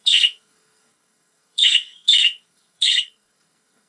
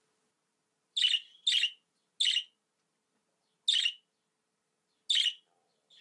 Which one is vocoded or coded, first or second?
first